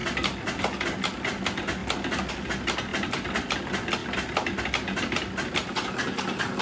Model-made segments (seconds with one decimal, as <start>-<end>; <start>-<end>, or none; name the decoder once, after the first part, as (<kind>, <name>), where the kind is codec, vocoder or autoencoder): none